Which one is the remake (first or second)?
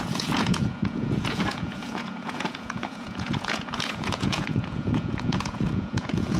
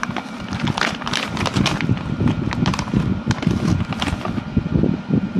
first